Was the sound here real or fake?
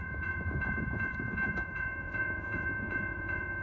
fake